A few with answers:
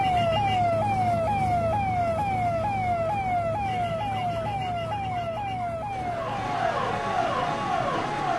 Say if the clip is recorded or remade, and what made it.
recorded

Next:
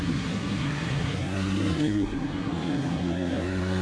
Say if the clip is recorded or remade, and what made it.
remade, codec, SNAC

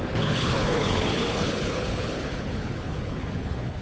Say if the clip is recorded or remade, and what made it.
remade, codec, HILCodec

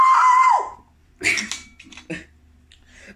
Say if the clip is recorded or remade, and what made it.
recorded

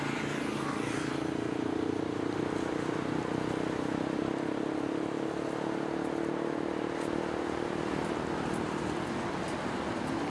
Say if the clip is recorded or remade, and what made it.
recorded